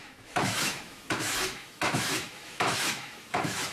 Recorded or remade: remade